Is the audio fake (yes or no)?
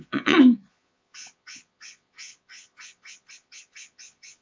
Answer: yes